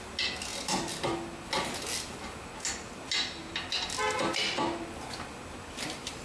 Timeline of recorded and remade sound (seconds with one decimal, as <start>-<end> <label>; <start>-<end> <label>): 0.0-6.2 recorded